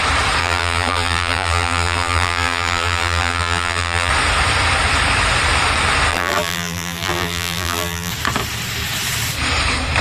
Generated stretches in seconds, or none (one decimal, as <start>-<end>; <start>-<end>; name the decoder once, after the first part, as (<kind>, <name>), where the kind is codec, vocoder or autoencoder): 0.4-4.1 (vocoder, BigVGAN v2); 6.1-8.1